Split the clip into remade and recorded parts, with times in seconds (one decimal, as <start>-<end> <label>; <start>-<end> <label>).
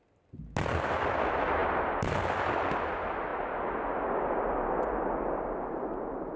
0.0-6.4 recorded